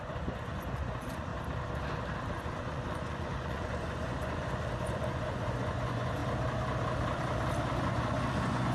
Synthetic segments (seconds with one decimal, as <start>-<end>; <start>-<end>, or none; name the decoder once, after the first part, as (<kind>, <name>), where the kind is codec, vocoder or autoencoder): 0.0-1.3 (vocoder, Vocos); 2.3-6.2; 7.8-8.7